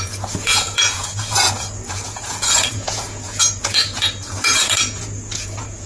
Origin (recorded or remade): remade